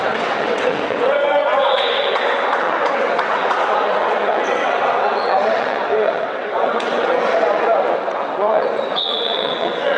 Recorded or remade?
remade